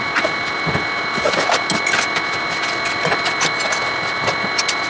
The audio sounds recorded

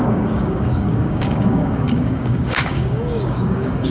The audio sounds remade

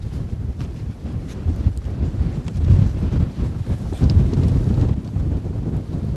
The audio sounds recorded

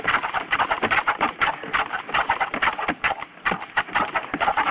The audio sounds recorded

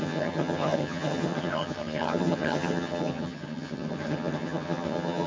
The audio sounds remade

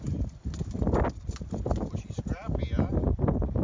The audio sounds recorded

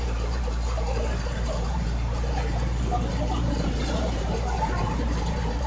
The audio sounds remade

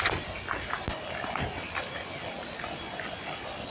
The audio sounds recorded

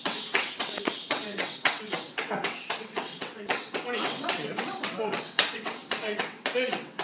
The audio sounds remade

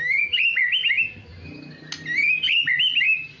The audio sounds recorded